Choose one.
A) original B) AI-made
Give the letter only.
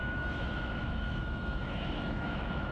B